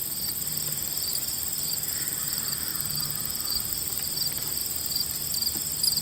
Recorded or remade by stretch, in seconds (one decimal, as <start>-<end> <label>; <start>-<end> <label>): 0.0-1.1 recorded; 1.1-1.9 remade; 1.9-4.6 recorded; 4.6-5.2 remade; 5.2-6.0 recorded